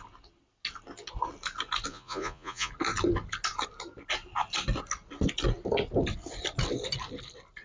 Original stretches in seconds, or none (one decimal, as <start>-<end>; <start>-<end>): 0.0-1.9; 2.7-7.6